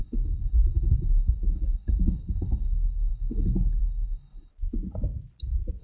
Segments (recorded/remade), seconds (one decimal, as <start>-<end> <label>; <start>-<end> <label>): 0.0-4.5 remade; 4.5-5.8 recorded